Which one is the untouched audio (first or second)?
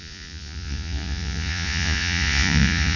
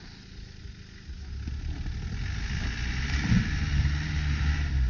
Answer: second